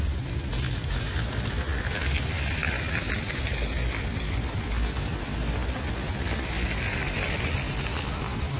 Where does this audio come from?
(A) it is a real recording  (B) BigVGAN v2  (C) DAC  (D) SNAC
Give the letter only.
A